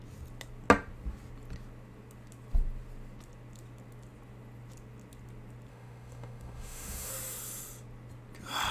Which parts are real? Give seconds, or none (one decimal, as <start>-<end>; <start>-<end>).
0.0-5.7; 7.1-8.7